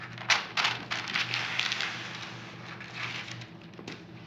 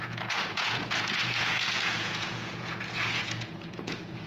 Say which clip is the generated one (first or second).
second